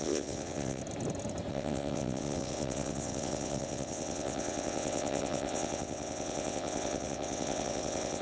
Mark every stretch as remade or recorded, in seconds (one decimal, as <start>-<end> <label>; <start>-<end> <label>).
0.0-0.8 remade; 0.8-1.5 recorded; 1.5-8.2 remade